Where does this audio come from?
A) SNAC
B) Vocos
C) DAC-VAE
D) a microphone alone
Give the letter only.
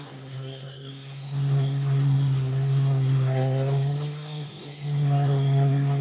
A